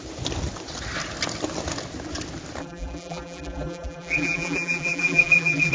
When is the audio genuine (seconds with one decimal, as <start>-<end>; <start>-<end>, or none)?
0.0-2.6